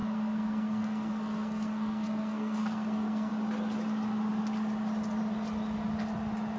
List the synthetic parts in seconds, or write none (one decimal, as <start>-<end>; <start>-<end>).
0.0-3.3